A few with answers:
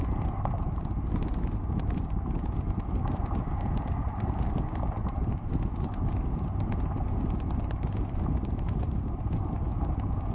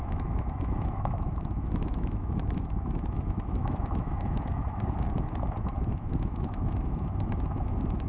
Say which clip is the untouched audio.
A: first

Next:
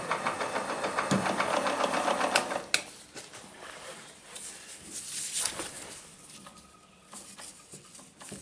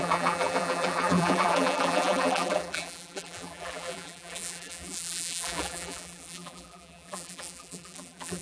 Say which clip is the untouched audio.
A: first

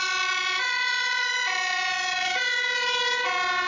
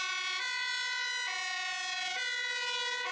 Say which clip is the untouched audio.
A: second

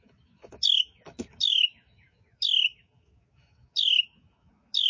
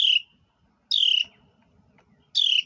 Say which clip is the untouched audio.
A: second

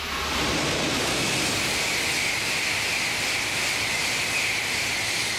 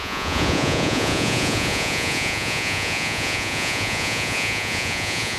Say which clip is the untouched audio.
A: first